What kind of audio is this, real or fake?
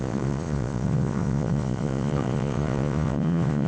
fake